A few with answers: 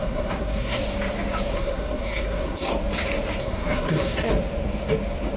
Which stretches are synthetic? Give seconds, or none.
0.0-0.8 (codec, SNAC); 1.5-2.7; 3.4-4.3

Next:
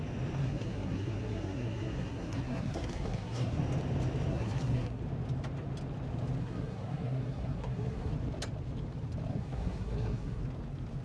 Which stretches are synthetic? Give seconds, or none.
0.4-3.6 (codec, SNAC); 4.3-5.0; 6.4-8.1; 9.3-10.4

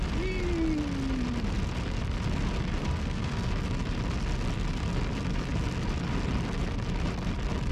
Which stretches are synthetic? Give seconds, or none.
2.8-3.5 (codec, SNAC)

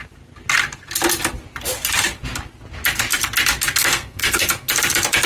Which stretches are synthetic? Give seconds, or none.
3.8-4.7 (codec, SNAC)

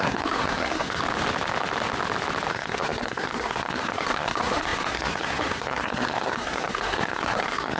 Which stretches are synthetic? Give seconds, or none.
0.0-1.0 (codec, SNAC); 2.5-7.8